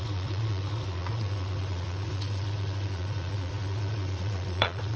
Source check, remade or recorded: remade